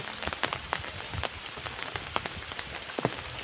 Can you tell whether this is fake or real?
real